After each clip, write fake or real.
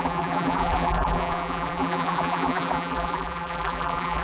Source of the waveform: fake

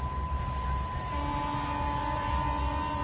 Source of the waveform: real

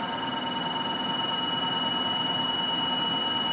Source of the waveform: real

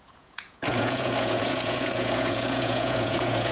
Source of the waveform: fake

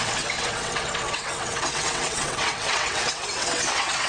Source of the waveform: fake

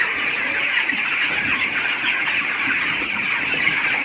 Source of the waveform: fake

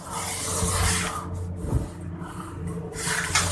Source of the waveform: real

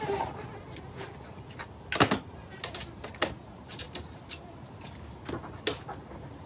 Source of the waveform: real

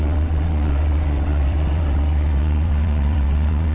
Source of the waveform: fake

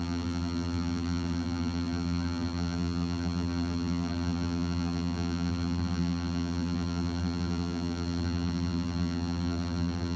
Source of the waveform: fake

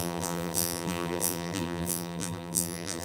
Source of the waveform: fake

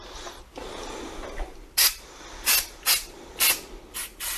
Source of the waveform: real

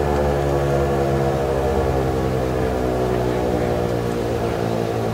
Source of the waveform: fake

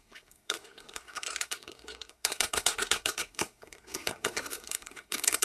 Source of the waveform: fake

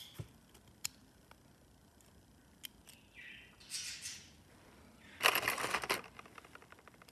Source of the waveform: real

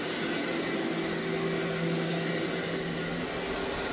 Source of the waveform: real